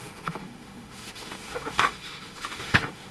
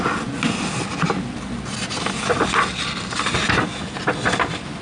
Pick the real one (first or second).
second